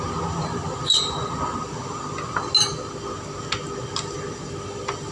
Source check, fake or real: real